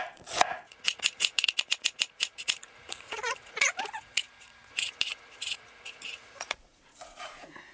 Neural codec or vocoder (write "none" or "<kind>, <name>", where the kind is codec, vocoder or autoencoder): vocoder, Vocos